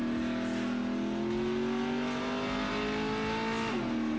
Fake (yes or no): no